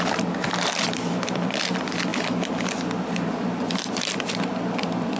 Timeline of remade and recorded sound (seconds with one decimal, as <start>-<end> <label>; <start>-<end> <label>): 0.0-2.1 remade; 2.1-3.1 recorded; 3.1-5.2 remade